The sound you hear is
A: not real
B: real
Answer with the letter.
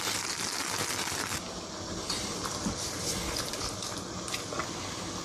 B